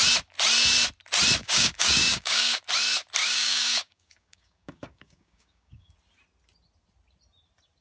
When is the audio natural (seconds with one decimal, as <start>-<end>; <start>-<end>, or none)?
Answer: 0.0-1.4; 2.6-3.2; 5.9-7.8